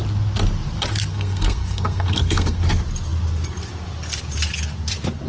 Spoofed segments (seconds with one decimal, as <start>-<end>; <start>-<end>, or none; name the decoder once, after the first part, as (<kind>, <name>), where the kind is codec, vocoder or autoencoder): 1.1-2.6 (codec, SNAC)